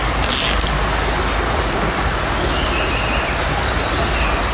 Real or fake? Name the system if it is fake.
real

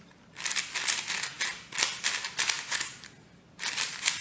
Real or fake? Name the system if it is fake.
real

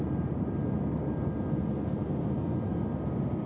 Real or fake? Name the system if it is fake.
real